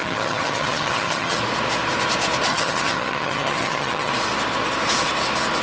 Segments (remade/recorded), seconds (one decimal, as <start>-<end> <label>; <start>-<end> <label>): 0.0-1.4 remade; 1.4-2.5 recorded; 2.5-4.1 remade; 4.1-5.6 recorded